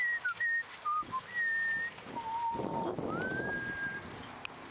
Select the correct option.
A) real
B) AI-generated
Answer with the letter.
A